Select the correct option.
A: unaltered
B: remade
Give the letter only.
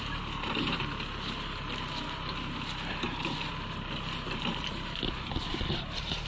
A